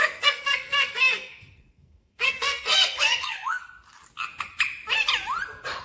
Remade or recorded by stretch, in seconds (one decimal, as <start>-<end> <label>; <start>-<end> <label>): 0.0-3.6 remade; 3.6-5.8 recorded